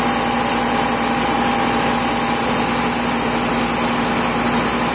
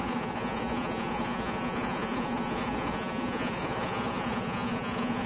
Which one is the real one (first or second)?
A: first